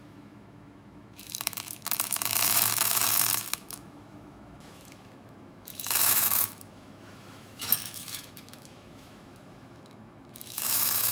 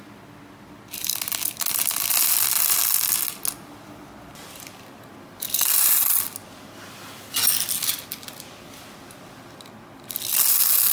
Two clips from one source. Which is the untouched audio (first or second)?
second